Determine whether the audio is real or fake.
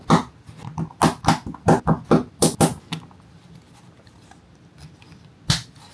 real